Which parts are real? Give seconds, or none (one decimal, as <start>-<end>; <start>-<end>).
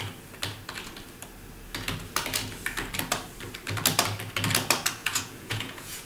0.0-5.0